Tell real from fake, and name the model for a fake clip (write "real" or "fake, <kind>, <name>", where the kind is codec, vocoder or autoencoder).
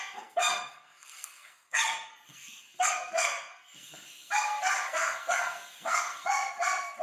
fake, codec, SNAC